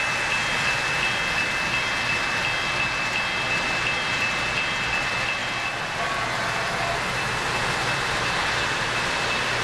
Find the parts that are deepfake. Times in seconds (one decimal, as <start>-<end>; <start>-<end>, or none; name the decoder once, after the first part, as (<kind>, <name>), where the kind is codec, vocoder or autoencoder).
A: none